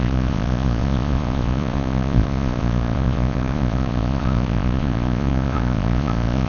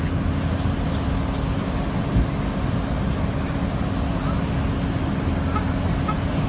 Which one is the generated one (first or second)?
first